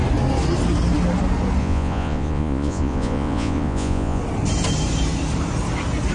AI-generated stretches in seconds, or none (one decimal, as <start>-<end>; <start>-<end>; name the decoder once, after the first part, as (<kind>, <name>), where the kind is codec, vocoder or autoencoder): 1.6-4.2 (vocoder, Vocos)